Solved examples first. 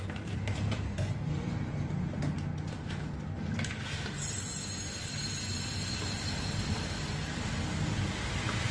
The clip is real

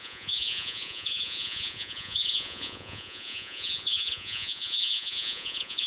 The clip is fake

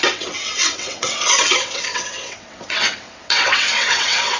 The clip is fake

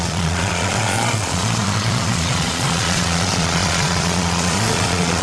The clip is fake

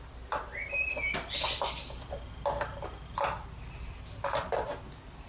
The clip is real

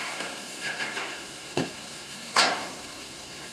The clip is fake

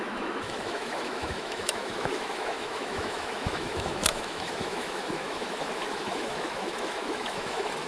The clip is fake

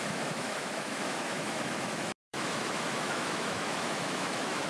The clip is fake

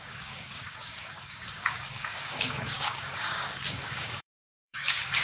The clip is fake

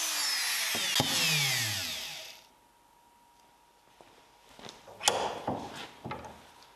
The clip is real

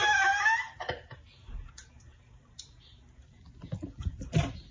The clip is real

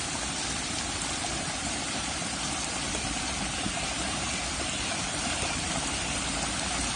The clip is real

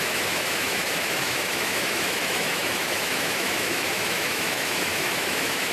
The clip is fake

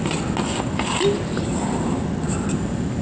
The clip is real